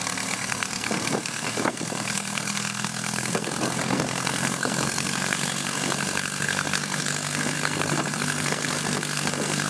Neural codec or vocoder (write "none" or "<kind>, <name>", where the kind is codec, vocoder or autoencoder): codec, SNAC